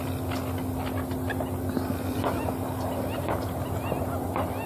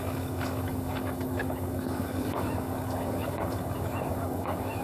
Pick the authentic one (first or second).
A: first